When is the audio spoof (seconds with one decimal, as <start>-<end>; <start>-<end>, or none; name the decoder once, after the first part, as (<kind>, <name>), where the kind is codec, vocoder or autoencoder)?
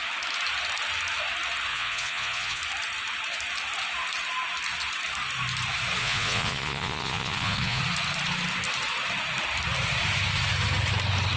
1.7-2.6 (vocoder, Vocos); 6.0-7.8